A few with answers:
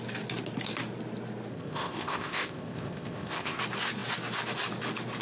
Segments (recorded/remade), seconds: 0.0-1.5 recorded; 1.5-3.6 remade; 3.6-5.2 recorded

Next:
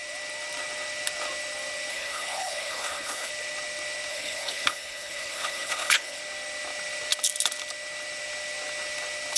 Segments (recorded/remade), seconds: 0.0-1.9 recorded; 1.9-3.3 remade; 3.3-4.1 recorded; 4.1-6.2 remade; 6.2-9.4 recorded

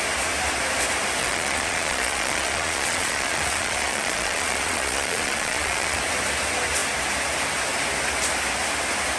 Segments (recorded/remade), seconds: 0.0-1.2 recorded; 1.2-6.0 remade; 6.0-9.2 recorded

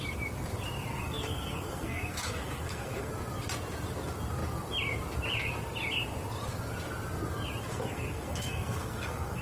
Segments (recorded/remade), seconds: 0.0-0.9 recorded; 0.9-3.1 remade; 3.1-7.7 recorded; 7.7-9.4 remade

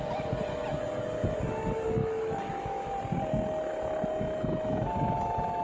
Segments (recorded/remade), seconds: 0.0-2.0 recorded; 2.0-3.0 remade; 3.0-3.7 recorded; 3.7-5.6 remade

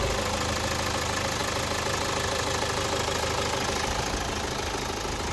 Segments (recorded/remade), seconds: 0.0-5.3 recorded